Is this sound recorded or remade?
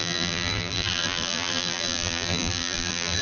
remade